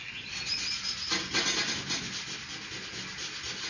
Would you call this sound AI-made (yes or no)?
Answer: no